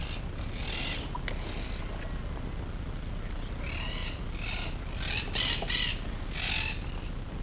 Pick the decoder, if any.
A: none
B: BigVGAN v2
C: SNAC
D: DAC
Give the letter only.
A